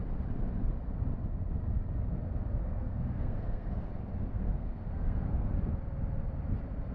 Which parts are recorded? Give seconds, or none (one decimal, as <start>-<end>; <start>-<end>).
0.0-2.6; 3.9-4.3; 5.5-6.9